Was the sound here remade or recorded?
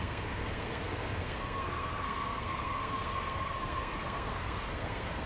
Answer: remade